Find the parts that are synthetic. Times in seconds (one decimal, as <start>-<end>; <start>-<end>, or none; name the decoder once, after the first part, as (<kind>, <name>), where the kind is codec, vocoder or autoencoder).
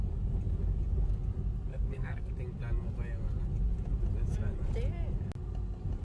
1.7-2.3 (codec, SNAC)